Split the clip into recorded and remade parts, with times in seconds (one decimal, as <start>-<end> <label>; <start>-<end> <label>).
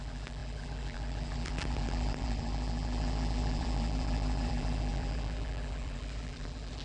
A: 0.0-6.8 remade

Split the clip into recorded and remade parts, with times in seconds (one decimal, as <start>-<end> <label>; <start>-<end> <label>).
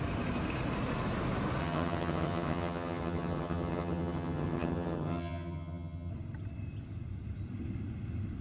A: 0.0-1.6 recorded; 1.6-6.1 remade; 6.1-8.4 recorded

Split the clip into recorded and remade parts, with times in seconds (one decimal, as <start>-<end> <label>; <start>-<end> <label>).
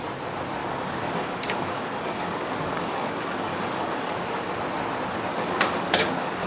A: 0.0-0.6 recorded; 0.6-4.5 remade; 4.5-5.3 recorded; 5.3-6.5 remade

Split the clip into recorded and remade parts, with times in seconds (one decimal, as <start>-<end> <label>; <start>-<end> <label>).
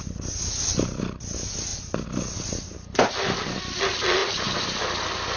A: 0.0-5.4 recorded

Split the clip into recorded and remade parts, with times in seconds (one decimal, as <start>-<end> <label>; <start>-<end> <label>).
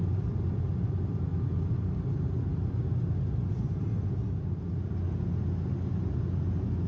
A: 0.0-6.9 recorded